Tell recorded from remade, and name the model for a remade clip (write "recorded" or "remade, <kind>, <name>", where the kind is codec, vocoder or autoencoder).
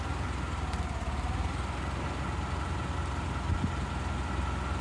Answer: recorded